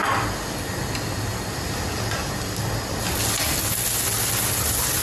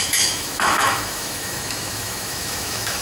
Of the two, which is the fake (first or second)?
second